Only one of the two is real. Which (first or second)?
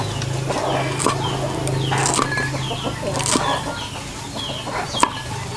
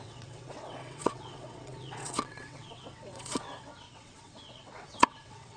first